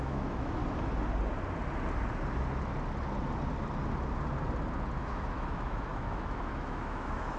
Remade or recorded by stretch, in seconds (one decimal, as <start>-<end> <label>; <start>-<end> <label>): 0.0-0.6 remade; 0.6-5.0 recorded; 5.0-7.4 remade